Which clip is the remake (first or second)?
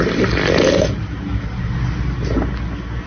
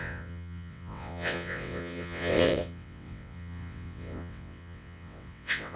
second